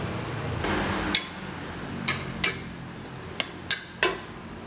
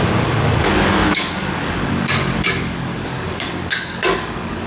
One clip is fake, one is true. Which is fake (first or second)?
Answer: second